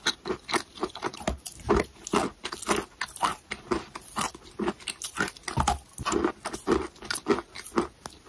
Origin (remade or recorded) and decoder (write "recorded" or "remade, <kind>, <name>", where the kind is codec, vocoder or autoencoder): recorded